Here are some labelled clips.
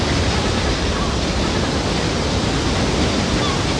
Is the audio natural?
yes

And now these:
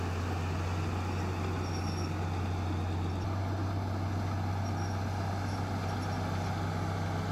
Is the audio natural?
yes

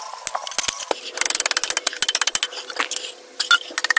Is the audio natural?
yes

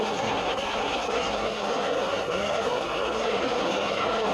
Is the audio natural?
no